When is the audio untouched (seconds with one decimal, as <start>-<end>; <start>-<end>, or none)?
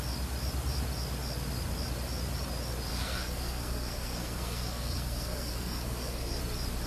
0.0-2.9; 6.4-6.9